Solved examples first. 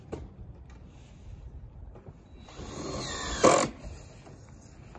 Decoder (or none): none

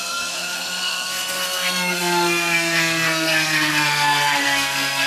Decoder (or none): codec, SNAC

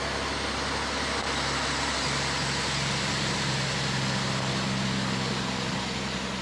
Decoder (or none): none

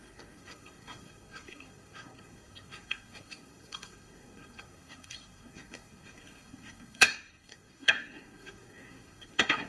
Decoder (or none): codec, SNAC